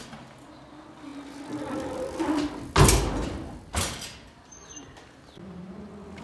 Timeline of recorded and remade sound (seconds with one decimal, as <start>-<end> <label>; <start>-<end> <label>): 0.0-6.2 recorded